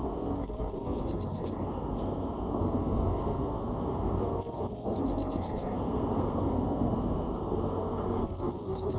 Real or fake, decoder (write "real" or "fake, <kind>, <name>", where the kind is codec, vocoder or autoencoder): fake, codec, SNAC